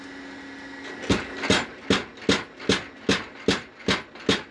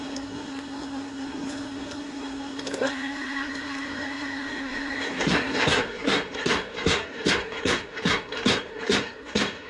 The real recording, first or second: first